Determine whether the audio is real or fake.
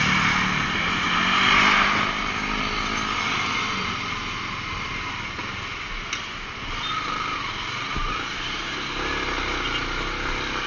real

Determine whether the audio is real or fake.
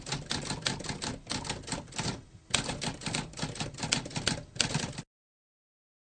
real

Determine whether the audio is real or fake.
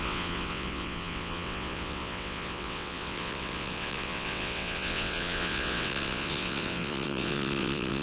fake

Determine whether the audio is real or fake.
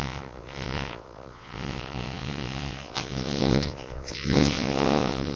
fake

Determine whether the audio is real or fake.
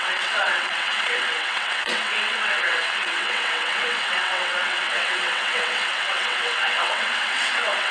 fake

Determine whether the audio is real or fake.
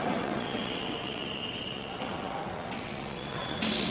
fake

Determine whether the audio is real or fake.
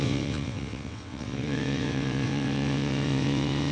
fake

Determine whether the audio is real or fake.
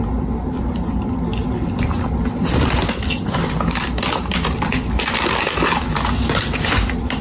real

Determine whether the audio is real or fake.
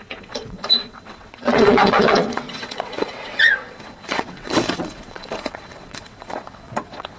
fake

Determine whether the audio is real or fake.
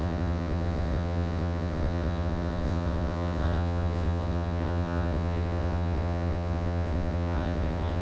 fake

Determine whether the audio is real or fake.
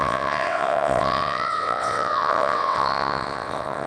fake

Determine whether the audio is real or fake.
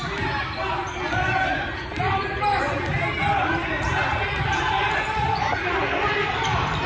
real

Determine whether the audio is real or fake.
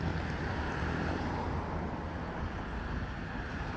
real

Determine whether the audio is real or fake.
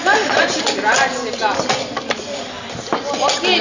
real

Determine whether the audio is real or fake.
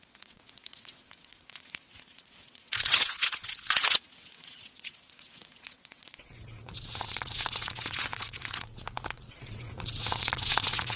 fake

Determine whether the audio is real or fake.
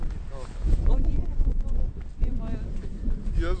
real